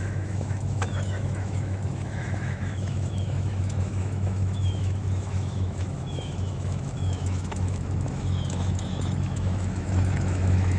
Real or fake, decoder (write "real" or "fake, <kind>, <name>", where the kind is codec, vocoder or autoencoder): fake, autoencoder, DAC-VAE